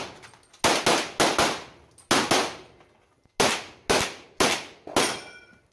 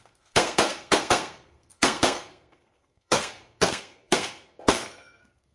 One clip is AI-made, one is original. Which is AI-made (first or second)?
second